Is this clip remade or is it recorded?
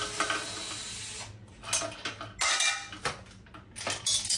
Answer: recorded